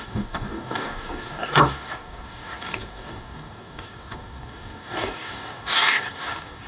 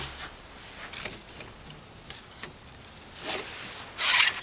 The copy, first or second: first